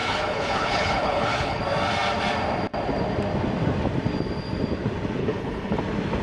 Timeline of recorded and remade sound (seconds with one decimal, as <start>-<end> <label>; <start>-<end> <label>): 0.0-1.6 remade; 1.6-5.2 recorded; 5.2-5.8 remade; 5.8-6.2 recorded

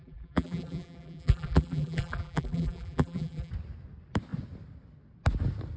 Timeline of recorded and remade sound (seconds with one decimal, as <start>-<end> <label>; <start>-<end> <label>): 0.0-3.5 remade; 3.5-5.8 recorded